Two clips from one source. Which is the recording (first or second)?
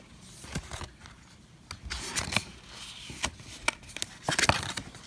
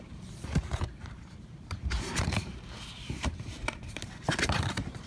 first